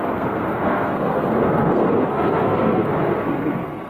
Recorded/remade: remade